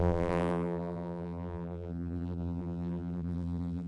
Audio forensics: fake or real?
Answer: fake